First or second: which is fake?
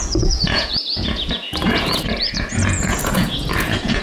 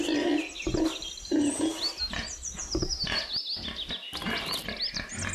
first